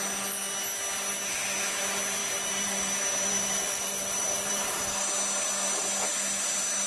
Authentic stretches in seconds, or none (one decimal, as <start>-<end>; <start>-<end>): 0.0-2.2; 4.7-6.9